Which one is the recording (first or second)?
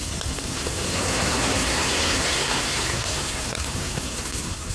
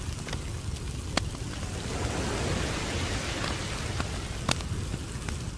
second